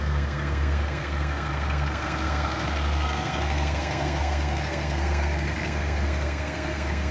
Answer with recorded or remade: remade